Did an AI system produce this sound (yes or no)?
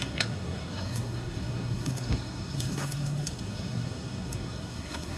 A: yes